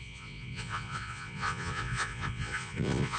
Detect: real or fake fake